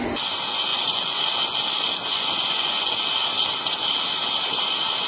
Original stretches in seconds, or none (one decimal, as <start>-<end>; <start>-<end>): 0.0-0.7; 1.2-2.1; 2.9-5.1